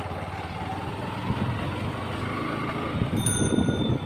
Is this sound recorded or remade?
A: recorded